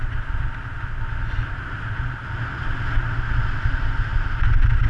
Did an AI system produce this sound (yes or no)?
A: no